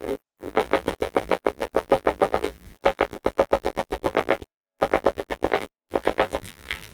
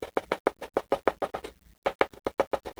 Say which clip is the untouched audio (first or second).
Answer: second